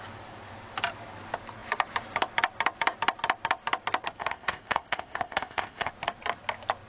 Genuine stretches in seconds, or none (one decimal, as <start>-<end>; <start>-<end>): 0.0-4.2; 5.9-6.9